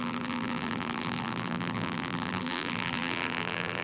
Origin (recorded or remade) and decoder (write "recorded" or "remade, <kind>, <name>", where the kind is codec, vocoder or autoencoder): remade, vocoder, BigVGAN v2